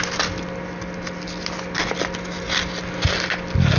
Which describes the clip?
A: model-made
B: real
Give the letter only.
B